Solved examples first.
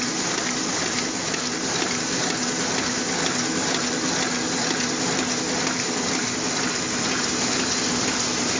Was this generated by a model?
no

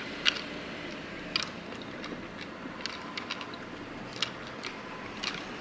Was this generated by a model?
no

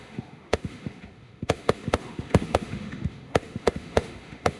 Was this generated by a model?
yes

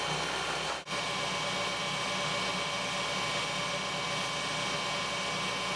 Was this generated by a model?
no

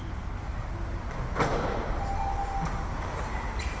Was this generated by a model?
no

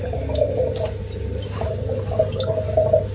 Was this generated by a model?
no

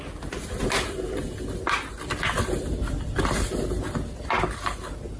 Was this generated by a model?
no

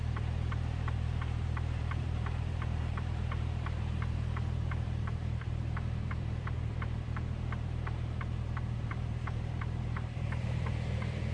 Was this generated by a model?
yes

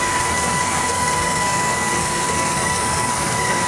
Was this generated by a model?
yes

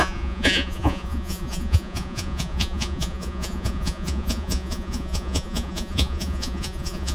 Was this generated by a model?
yes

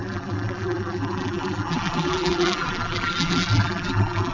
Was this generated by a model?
yes